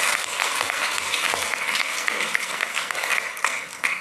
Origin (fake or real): fake